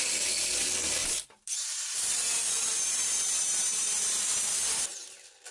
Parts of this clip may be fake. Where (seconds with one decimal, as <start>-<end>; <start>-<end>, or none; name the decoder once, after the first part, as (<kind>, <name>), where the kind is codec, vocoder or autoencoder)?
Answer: 1.0-4.3 (vocoder, BigVGAN v2)